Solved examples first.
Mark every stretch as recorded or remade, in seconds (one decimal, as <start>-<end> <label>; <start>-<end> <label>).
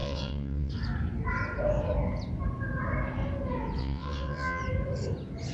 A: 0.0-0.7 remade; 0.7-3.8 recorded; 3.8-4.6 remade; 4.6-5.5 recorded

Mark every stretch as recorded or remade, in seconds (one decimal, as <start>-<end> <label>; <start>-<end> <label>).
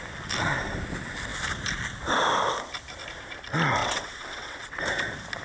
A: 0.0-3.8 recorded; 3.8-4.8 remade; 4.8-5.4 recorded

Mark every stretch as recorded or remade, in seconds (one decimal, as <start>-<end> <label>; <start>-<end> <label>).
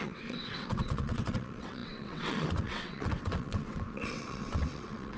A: 0.0-5.2 remade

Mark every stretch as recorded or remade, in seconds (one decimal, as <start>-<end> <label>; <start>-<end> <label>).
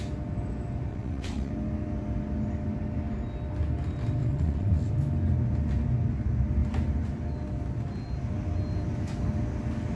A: 0.0-0.9 recorded; 0.9-1.5 remade; 1.5-4.2 recorded; 4.2-4.9 remade; 4.9-10.0 recorded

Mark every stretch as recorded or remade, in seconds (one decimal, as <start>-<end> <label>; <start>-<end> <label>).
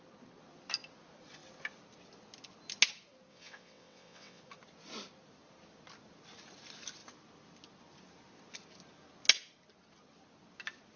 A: 0.0-3.3 recorded; 3.3-4.4 remade; 4.4-11.0 recorded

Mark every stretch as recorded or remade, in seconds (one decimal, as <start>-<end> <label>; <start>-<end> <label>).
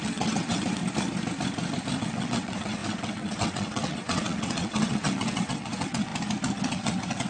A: 0.0-0.8 remade; 0.8-2.0 recorded; 2.0-6.1 remade; 6.1-6.6 recorded; 6.6-7.3 remade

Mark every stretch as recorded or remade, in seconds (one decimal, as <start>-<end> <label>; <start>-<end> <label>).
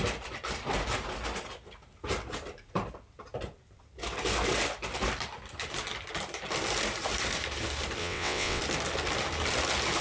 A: 0.0-8.0 recorded; 8.0-8.6 remade; 8.6-10.0 recorded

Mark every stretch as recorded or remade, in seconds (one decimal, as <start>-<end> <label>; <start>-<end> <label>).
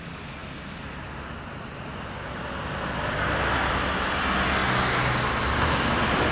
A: 0.0-6.3 recorded